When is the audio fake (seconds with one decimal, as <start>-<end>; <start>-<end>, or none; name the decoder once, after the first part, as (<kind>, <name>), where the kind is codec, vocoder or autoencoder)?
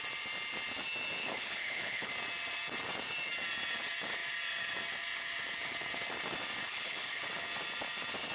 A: 1.2-2.1 (codec, HILCodec); 6.6-7.2